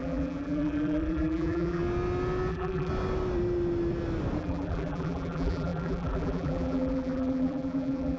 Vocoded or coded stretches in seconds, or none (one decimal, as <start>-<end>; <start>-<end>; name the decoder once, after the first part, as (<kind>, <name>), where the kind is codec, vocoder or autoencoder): 0.0-1.8 (vocoder, BigVGAN v2); 2.5-2.9; 4.4-8.2